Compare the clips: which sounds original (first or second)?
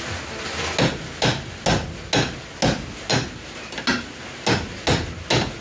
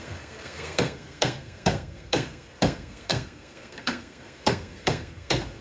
first